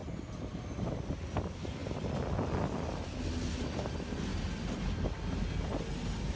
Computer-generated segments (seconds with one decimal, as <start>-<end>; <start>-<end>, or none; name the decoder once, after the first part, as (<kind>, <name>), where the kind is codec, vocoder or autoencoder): none